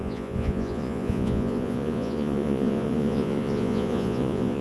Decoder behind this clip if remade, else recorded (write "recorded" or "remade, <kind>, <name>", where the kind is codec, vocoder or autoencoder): remade, vocoder, Vocos